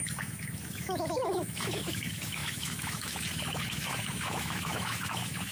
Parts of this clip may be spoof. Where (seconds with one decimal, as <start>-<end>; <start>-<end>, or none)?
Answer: 0.0-5.5